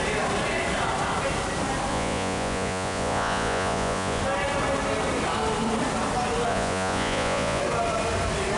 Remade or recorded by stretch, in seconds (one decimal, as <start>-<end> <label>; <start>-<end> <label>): 0.0-1.9 recorded; 1.9-4.2 remade; 4.2-6.5 recorded; 6.5-7.6 remade; 7.6-8.6 recorded